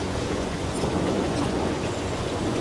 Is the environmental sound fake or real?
fake